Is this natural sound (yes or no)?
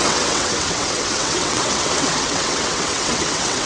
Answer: no